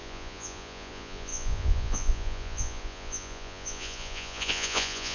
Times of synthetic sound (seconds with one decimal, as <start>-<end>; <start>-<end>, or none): 0.0-5.1